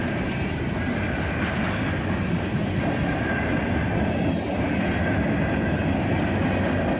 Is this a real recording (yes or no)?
yes